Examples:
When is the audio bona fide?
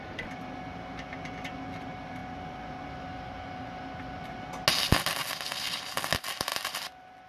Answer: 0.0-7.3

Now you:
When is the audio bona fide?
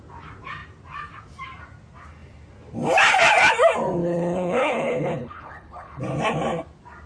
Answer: 0.0-4.0; 6.0-7.1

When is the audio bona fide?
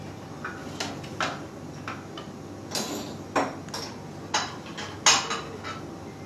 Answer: 0.0-6.3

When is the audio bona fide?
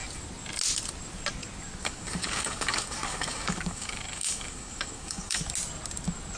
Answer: 0.0-1.8; 5.4-6.4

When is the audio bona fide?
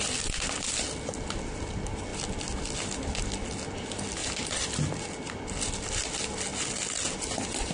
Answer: 0.0-7.7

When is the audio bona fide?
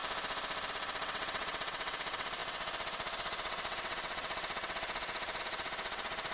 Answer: 0.0-0.7